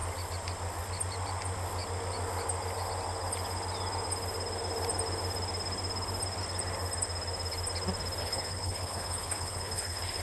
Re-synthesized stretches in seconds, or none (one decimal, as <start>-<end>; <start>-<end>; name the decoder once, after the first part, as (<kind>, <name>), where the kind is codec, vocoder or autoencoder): 8.2-10.2 (codec, HILCodec)